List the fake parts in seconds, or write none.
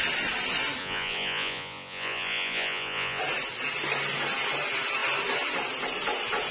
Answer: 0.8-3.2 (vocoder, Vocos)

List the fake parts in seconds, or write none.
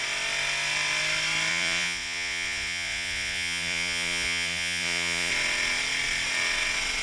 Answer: 1.5-5.3 (vocoder, Vocos)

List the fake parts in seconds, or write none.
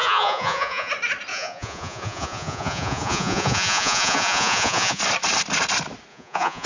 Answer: 0.0-0.9 (vocoder, Vocos); 1.3-5.0; 6.1-6.7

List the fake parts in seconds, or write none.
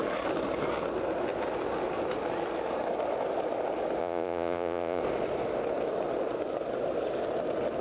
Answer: 4.0-5.0 (vocoder, Vocos)